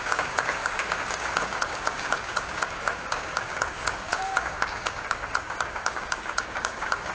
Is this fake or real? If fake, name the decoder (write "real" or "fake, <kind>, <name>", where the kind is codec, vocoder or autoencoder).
fake, codec, DAC